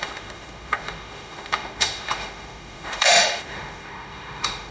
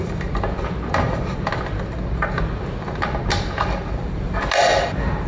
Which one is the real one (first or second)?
second